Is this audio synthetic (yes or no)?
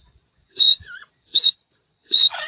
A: yes